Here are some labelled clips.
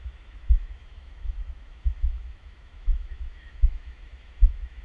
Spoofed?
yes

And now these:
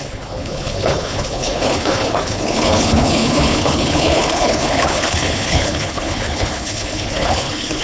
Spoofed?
yes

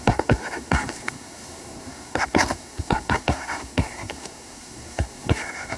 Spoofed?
yes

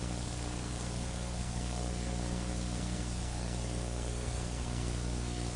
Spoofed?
yes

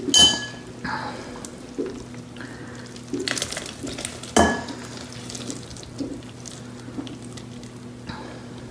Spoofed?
no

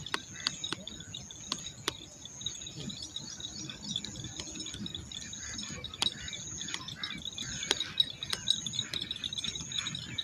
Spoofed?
no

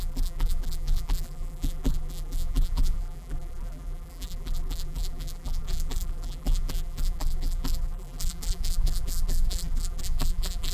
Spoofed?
yes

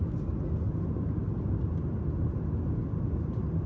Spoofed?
no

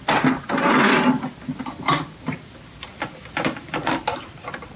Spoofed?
no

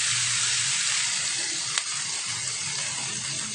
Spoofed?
no